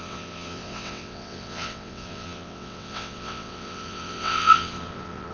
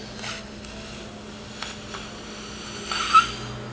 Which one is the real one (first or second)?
second